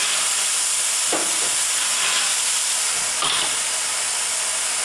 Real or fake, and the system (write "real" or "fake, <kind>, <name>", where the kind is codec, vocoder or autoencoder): real